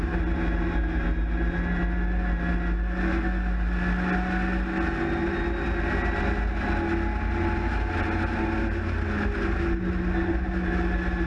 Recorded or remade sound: recorded